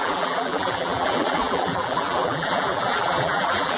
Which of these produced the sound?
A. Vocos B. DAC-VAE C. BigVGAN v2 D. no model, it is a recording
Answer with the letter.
C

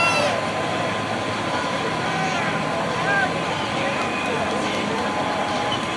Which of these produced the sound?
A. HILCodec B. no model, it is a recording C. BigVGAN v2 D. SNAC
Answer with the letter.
B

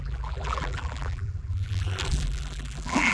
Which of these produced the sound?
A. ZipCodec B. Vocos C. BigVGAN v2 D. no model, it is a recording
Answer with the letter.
C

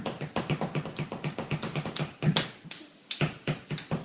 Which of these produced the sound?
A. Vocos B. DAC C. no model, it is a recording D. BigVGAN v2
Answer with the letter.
C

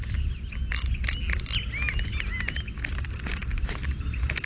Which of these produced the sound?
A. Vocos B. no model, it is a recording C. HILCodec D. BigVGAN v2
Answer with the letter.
B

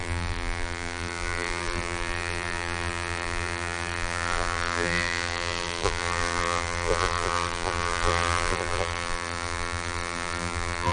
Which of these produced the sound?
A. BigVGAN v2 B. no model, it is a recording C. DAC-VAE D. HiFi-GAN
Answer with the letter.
A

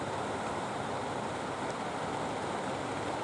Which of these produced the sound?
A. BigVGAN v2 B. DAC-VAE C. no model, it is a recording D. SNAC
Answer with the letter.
C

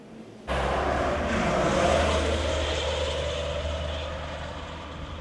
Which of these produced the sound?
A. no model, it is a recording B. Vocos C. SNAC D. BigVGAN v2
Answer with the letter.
A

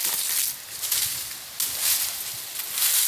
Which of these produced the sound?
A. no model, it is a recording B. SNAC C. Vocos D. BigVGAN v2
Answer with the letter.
A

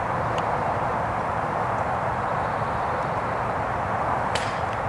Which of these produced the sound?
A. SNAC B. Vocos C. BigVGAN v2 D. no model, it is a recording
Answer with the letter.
C